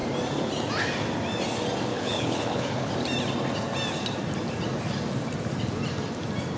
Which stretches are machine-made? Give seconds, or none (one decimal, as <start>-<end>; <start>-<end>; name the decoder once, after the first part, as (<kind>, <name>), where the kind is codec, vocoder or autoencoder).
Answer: 1.9-2.9 (codec, HILCodec)